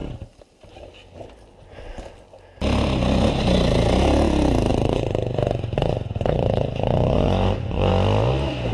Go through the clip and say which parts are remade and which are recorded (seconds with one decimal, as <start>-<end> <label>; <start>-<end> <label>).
0.0-4.7 recorded; 4.7-7.9 remade; 7.9-8.7 recorded